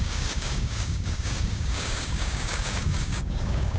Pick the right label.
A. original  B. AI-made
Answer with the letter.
B